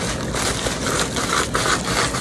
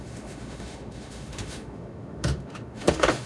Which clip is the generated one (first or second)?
second